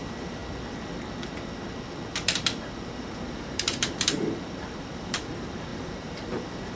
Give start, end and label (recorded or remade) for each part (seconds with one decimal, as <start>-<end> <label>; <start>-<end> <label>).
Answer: 0.0-0.4 remade; 0.4-2.1 recorded; 2.1-6.8 remade